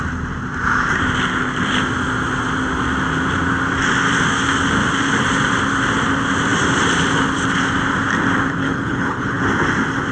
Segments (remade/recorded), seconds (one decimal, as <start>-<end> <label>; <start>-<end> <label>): 0.0-8.6 recorded; 8.6-9.4 remade; 9.4-10.1 recorded